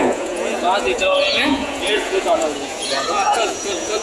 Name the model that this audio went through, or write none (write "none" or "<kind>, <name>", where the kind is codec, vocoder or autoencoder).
vocoder, Vocos